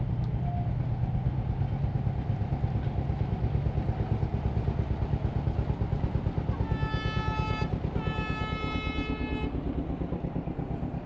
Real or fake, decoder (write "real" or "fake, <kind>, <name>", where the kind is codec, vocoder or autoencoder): real